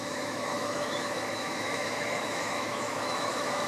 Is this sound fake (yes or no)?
yes